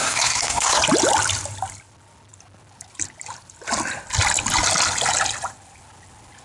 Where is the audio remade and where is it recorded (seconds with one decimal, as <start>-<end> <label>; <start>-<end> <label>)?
0.0-0.8 remade; 0.8-6.4 recorded